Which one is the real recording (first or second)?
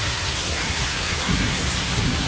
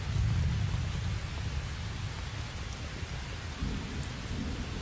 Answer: second